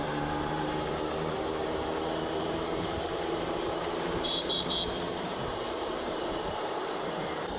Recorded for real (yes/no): no